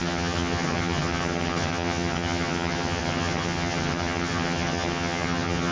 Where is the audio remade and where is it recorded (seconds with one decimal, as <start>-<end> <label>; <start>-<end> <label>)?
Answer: 0.0-5.7 remade